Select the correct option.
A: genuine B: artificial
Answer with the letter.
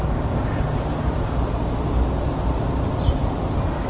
A